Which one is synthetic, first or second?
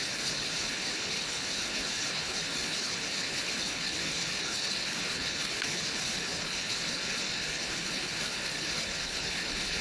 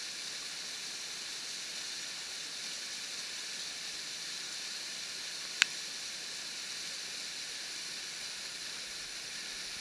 first